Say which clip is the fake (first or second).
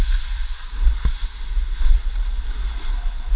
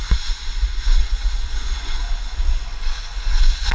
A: second